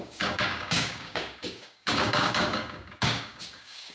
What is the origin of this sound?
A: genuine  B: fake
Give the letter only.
B